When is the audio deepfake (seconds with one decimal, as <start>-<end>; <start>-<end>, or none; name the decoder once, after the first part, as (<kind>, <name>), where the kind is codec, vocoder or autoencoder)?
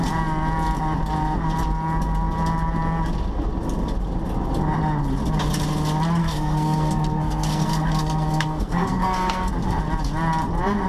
6.2-9.5 (codec, SNAC)